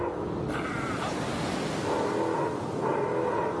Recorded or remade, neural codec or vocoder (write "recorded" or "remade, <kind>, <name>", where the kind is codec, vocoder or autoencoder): recorded